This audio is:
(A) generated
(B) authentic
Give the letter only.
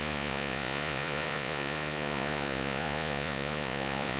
A